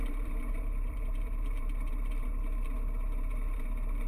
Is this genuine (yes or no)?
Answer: no